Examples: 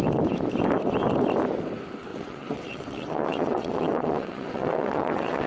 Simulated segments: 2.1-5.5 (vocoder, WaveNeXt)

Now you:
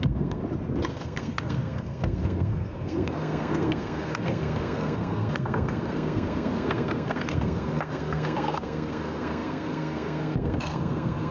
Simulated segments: 0.0-0.4 (codec, SNAC); 0.9-11.3

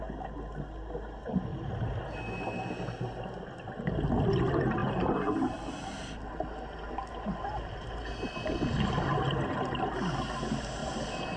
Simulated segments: 4.8-5.7 (vocoder, BigVGAN v2); 10.8-11.4

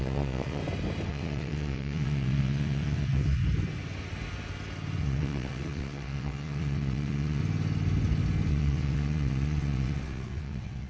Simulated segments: 0.0-0.6 (vocoder, WaveNeXt); 1.1-3.4; 5.0-7.4; 8.5-10.9

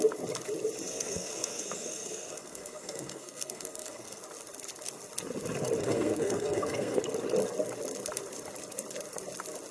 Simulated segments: 0.9-4.2 (codec, SNAC); 5.8-7.0

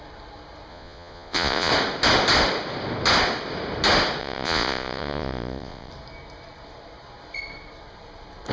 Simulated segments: 0.7-1.7 (vocoder, Vocos); 4.2-5.9

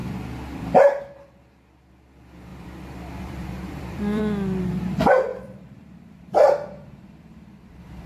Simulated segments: 0.0-1.0 (vocoder, BigVGAN v2); 2.5-4.2; 5.3-8.1